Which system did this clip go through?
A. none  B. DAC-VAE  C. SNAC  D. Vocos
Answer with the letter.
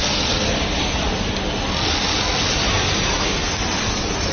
A